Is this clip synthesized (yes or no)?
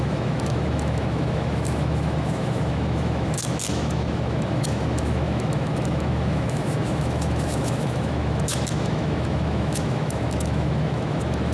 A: yes